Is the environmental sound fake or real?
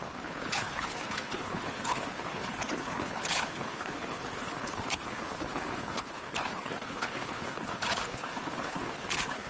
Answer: fake